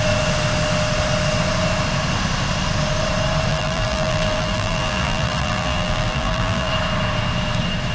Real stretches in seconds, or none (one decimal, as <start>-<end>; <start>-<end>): 0.0-3.5; 6.7-7.9